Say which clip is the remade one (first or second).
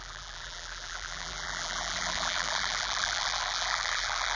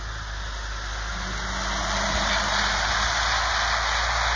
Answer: first